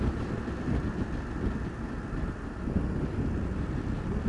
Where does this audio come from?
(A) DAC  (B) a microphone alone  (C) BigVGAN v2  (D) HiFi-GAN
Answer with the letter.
B